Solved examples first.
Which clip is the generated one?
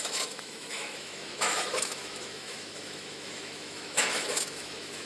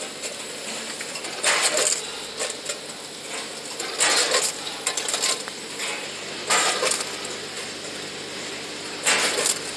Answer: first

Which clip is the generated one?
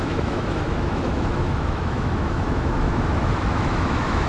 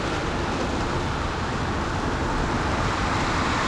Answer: first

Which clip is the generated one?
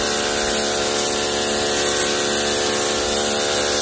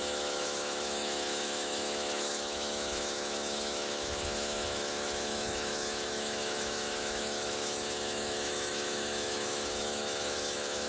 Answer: second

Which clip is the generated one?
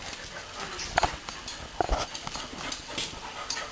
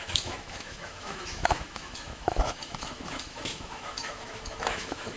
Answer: second